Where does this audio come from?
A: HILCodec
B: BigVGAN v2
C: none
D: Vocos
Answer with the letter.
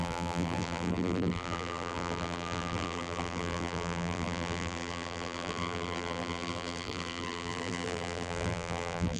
B